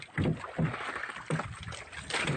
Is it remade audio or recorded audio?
recorded